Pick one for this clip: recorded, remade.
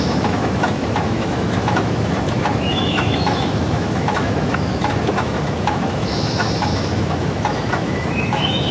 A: remade